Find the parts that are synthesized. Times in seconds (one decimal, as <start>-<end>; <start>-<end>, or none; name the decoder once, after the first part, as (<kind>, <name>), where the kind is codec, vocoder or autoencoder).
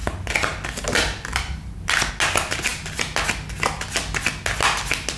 none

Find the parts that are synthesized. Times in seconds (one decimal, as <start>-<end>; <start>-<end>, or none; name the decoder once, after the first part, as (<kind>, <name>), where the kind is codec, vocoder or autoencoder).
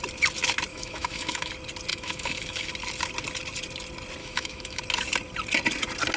0.7-1.5 (autoencoder, DAC-VAE); 1.9-2.7; 4.2-4.8